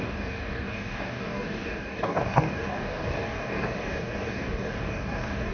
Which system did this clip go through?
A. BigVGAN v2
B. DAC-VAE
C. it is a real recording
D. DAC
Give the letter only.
D